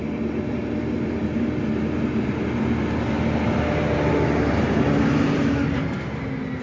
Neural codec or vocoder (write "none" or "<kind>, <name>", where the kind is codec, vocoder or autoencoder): none